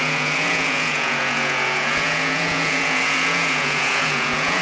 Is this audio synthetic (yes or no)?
yes